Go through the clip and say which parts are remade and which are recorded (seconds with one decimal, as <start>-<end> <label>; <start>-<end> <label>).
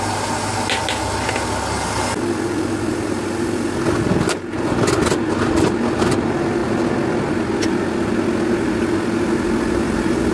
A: 0.0-10.3 recorded